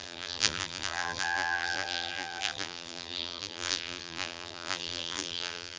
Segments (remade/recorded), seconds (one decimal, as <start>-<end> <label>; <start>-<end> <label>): 0.0-5.8 remade